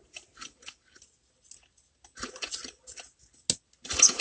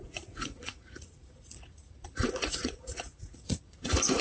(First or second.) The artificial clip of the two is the second